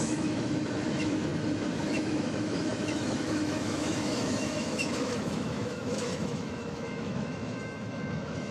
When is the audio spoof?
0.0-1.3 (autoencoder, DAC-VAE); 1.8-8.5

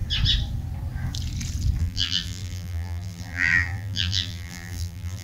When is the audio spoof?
1.8-5.2 (vocoder, BigVGAN v2)